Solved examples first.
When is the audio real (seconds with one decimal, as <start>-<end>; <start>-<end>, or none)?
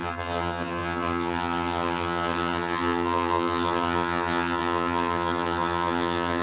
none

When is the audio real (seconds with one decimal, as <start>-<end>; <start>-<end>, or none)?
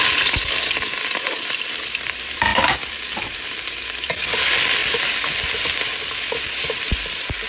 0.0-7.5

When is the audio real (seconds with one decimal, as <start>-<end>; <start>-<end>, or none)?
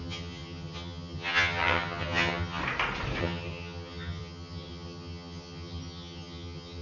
2.6-3.2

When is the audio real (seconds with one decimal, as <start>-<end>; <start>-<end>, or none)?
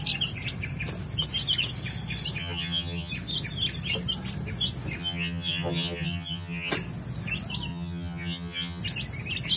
0.0-2.4; 3.1-5.0; 6.7-7.7; 8.8-9.6